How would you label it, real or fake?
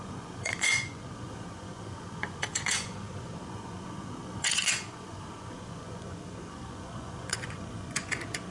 fake